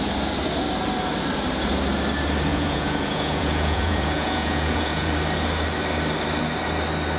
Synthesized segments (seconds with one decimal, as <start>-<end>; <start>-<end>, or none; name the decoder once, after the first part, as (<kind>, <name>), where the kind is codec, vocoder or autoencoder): 2.5-5.1 (vocoder, Vocos)